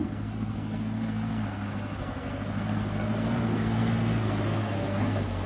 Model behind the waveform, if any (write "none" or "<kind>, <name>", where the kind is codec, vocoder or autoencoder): codec, SNAC